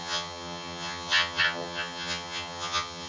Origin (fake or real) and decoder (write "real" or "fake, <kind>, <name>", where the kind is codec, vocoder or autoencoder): fake, vocoder, HiFi-GAN